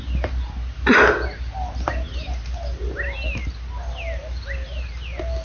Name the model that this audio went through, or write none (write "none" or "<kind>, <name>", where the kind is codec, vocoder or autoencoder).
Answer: none